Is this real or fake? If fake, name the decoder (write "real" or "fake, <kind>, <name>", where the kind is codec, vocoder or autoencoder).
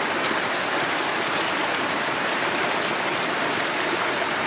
real